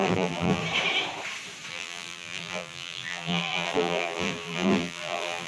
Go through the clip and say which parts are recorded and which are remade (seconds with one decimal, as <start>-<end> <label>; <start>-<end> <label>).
0.0-0.6 remade; 0.6-1.7 recorded; 1.7-5.5 remade